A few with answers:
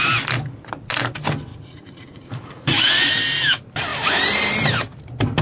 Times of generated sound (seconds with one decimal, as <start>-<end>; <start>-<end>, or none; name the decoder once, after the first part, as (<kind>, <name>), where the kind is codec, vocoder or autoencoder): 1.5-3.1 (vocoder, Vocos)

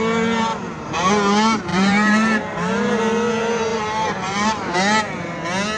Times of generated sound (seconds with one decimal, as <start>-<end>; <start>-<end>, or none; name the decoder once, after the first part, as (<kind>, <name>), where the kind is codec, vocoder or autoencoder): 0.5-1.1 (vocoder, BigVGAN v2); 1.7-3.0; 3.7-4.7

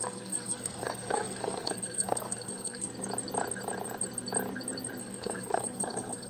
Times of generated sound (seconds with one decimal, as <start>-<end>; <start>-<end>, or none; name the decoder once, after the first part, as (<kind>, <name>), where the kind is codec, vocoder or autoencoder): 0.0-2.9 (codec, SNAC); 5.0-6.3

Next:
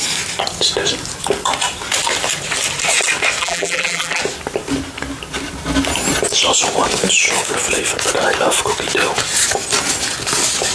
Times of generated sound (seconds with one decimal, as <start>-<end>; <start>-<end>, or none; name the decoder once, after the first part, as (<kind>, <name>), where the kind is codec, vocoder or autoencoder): 3.4-4.2 (vocoder, BigVGAN v2)

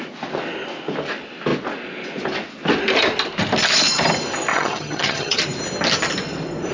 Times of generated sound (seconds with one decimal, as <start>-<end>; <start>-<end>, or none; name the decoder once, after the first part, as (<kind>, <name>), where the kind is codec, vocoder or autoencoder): 4.5-5.4 (vocoder, HiFi-GAN)